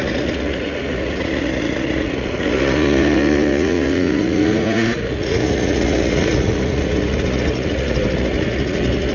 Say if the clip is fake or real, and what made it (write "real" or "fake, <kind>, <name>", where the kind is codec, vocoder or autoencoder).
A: fake, vocoder, Vocos